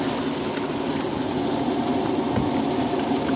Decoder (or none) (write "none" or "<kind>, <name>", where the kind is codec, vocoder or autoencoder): none